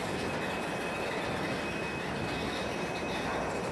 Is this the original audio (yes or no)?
yes